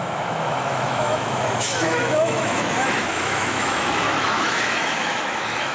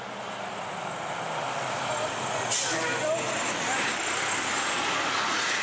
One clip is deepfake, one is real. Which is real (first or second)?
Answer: second